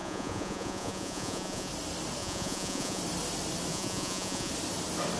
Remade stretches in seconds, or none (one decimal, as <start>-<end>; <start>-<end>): 0.0-1.7; 2.2-3.0; 3.7-4.5